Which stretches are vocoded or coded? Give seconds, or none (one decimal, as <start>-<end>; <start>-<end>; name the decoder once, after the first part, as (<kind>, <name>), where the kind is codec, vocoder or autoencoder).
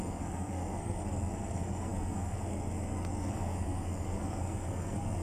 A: 0.0-5.2 (codec, SNAC)